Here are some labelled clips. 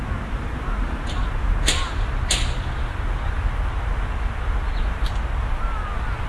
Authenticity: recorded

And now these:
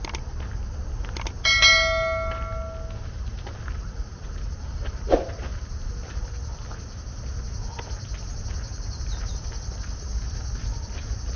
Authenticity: recorded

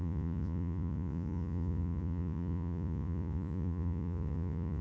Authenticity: remade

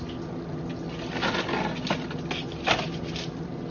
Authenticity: recorded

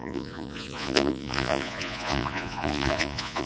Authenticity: remade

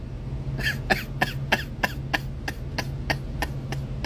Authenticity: recorded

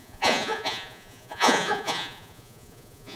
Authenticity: remade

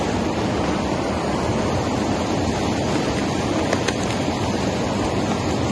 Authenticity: recorded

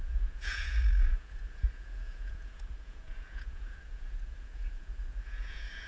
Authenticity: remade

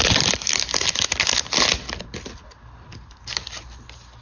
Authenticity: recorded